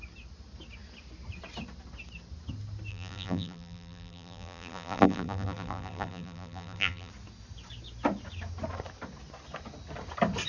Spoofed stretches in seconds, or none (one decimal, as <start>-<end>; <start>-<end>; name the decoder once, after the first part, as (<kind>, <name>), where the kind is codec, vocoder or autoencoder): 2.9-7.1 (vocoder, BigVGAN v2)